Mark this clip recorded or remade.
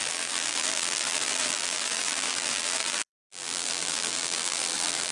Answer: remade